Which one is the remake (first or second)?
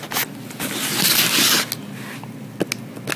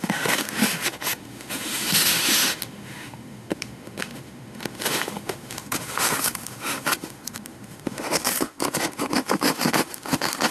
second